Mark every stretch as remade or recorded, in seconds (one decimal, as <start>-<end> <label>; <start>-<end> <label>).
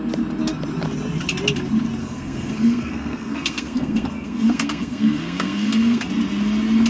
0.0-2.0 recorded; 2.0-6.1 remade; 6.1-6.9 recorded